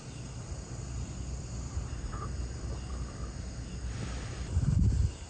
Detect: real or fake real